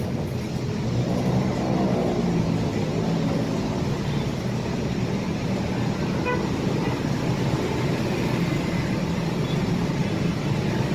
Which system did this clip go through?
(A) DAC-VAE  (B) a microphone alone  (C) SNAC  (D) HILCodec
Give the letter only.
B